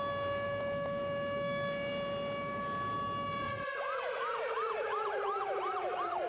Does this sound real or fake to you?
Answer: real